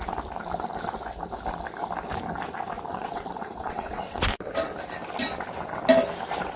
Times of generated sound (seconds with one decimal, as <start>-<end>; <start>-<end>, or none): 2.9-4.5